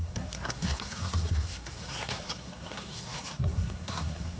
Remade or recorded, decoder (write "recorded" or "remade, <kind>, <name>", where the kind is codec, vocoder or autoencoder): remade, codec, SNAC